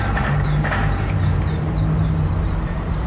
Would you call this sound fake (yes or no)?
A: yes